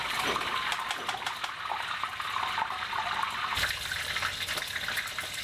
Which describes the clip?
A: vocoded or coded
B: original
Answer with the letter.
B